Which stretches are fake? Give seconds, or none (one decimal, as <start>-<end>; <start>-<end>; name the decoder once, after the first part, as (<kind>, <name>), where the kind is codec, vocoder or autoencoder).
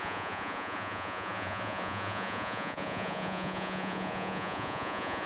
0.0-5.3 (vocoder, Vocos)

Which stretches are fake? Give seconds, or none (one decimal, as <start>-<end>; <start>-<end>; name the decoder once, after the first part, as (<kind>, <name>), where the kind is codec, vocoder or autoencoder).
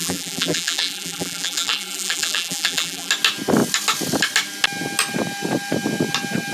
0.0-3.1 (vocoder, BigVGAN v2)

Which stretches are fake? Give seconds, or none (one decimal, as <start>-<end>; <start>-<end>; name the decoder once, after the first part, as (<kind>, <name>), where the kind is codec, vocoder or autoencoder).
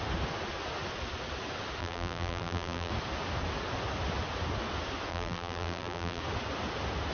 1.8-2.9 (vocoder, BigVGAN v2); 5.1-6.2